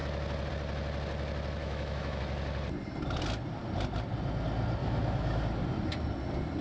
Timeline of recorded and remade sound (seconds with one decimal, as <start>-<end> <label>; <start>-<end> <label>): 0.0-1.6 recorded; 1.6-2.2 remade; 2.2-4.8 recorded; 4.8-5.4 remade; 5.4-6.6 recorded